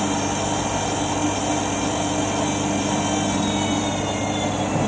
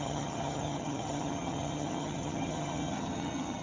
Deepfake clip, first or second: second